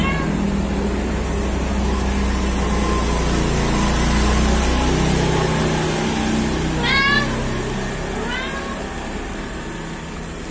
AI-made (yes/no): no